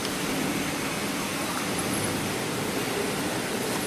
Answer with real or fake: real